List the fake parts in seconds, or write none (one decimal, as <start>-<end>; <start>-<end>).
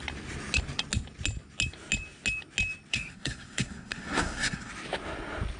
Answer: 2.9-4.7